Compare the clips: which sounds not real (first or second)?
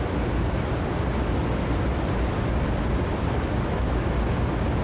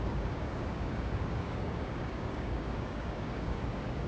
second